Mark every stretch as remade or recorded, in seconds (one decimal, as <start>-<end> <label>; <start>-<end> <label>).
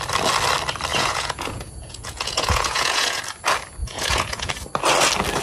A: 0.0-0.9 recorded; 0.9-3.2 remade; 3.2-3.8 recorded; 3.8-4.5 remade; 4.5-5.4 recorded